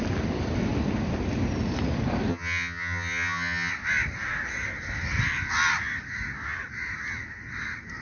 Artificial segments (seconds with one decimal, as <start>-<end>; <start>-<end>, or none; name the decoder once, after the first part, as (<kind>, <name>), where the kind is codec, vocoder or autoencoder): 2.3-3.7 (vocoder, HiFi-GAN)